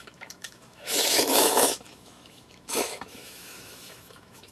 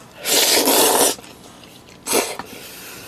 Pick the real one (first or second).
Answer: second